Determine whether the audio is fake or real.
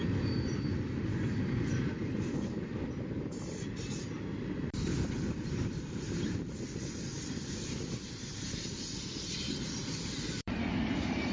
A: fake